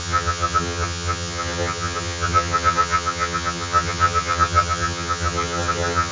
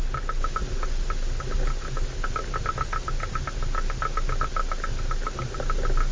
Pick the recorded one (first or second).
second